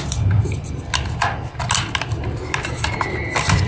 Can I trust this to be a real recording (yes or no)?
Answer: yes